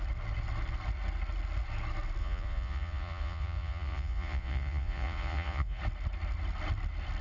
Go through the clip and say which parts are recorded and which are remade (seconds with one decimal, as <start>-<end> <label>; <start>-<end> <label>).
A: 0.0-2.2 recorded; 2.2-5.8 remade; 5.8-7.2 recorded